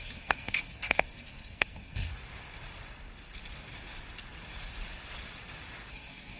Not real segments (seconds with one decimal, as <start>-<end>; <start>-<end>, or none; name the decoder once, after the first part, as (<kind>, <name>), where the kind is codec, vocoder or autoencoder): 0.0-2.1 (codec, SNAC); 5.9-6.4

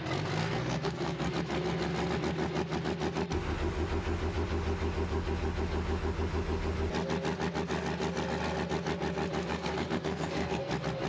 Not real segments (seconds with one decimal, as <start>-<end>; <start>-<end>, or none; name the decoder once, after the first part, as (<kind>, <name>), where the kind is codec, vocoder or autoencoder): 0.4-1.3 (codec, SNAC); 9.4-10.7

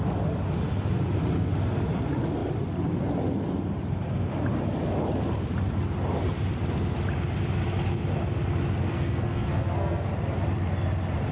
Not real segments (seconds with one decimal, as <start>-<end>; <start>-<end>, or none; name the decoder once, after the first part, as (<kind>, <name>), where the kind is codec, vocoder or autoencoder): 8.8-10.1 (codec, SNAC)

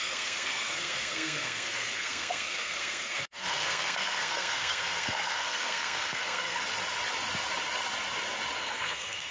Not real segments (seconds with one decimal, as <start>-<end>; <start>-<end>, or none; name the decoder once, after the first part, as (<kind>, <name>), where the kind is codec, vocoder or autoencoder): 0.0-6.6 (codec, SNAC); 8.6-9.3

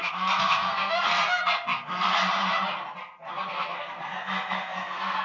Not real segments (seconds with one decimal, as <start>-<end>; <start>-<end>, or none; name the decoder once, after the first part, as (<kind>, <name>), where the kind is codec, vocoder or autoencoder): 0.0-2.2 (codec, SNAC); 3.3-5.2